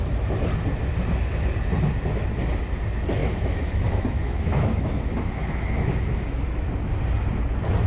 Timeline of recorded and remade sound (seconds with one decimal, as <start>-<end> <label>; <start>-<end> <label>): 0.0-3.2 recorded; 3.2-6.7 remade; 6.7-7.9 recorded